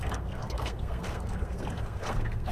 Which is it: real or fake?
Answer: fake